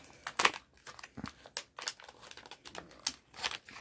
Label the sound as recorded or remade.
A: recorded